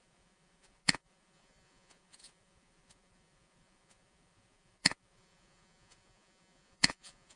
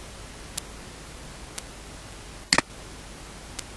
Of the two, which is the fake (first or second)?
first